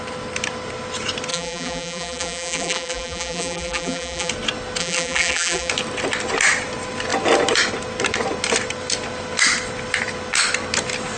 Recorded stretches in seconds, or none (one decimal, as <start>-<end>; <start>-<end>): 0.0-1.3; 4.3-4.8; 5.7-11.2